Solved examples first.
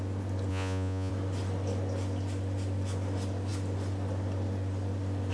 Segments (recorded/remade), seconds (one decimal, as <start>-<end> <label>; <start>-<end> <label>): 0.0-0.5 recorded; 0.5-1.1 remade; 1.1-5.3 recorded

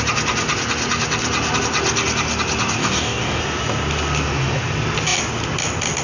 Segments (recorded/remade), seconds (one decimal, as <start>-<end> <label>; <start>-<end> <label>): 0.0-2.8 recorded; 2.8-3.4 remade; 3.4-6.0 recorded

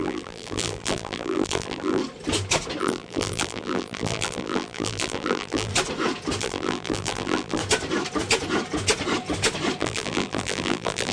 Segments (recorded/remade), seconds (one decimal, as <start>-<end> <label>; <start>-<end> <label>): 0.0-2.0 remade; 2.0-2.8 recorded; 2.8-5.7 remade; 5.7-6.4 recorded; 6.4-7.6 remade; 7.6-9.8 recorded; 9.8-11.1 remade

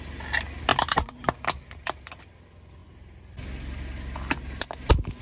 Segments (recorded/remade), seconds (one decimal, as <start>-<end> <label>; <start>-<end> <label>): 0.0-0.7 recorded; 0.7-1.4 remade; 1.4-5.2 recorded